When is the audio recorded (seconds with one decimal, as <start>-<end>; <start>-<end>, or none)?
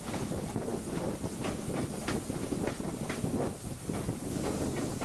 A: 0.0-5.0